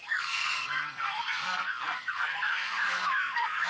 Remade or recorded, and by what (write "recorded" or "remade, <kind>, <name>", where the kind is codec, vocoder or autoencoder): remade, codec, SNAC